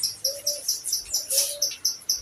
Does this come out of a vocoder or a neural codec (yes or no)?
no